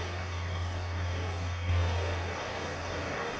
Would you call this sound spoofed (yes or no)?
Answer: yes